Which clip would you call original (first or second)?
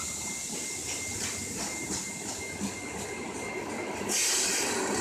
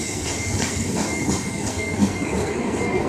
first